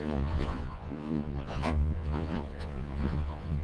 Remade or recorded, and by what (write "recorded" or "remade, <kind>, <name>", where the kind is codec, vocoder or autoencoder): remade, vocoder, Vocos